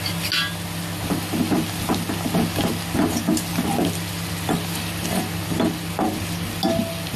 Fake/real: real